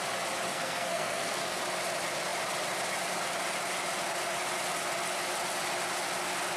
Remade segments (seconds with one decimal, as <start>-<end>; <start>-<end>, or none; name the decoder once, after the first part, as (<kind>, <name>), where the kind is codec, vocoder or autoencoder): 0.5-1.6 (codec, SNAC)